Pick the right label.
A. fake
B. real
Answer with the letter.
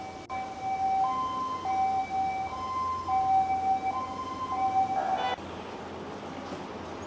B